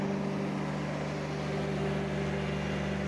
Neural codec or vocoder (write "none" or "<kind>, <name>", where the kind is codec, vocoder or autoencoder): none